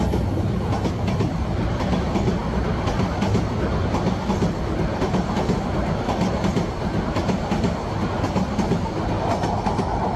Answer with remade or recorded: recorded